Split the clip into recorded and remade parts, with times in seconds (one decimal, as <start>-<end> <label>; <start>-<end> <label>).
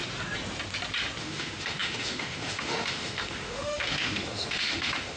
0.0-1.2 recorded; 1.2-5.2 remade